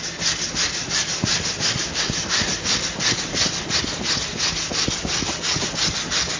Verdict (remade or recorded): recorded